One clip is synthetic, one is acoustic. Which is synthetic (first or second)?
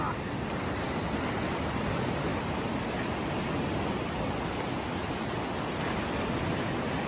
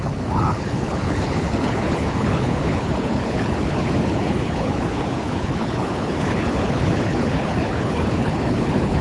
second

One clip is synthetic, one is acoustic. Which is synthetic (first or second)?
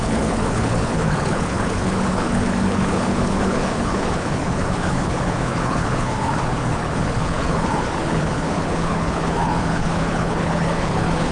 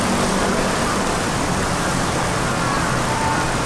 first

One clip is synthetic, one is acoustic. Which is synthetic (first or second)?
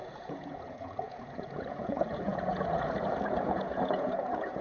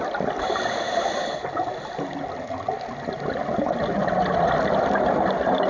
first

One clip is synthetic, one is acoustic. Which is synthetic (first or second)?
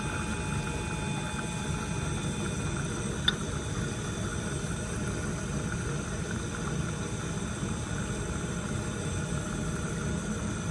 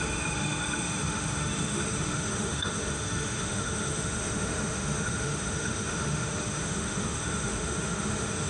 second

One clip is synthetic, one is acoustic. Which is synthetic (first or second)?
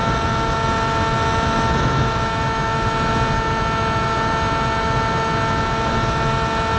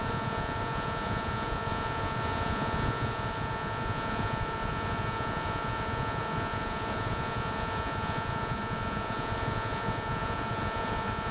second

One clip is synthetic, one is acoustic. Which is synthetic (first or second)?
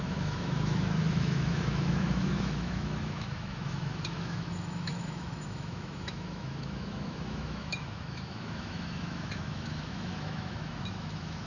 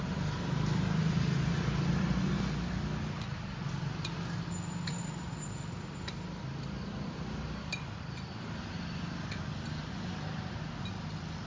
first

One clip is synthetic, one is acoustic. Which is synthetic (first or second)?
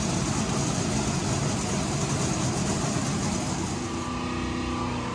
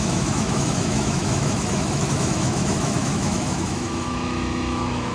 second